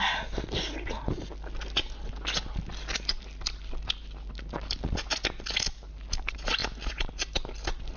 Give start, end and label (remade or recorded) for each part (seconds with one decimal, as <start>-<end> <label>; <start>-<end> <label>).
0.0-8.0 recorded